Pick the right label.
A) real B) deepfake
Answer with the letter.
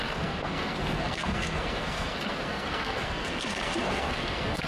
B